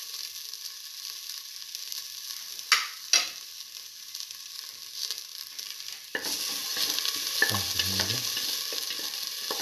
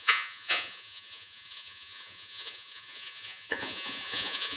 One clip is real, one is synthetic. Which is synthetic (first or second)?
second